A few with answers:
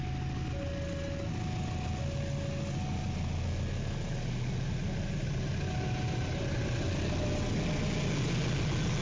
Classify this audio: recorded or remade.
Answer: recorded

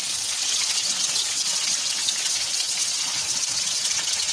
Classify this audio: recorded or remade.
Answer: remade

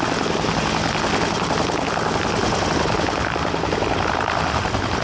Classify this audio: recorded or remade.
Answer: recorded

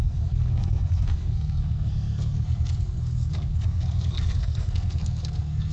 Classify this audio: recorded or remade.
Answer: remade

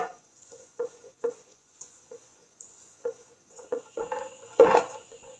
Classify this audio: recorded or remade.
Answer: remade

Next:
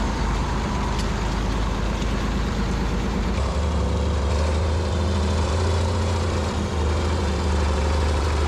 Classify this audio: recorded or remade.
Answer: remade